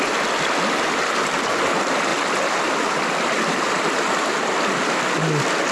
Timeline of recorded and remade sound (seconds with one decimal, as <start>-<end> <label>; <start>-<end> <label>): 0.0-2.1 recorded; 2.1-4.3 remade; 4.3-5.7 recorded